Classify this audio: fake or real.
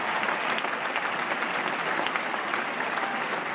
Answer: real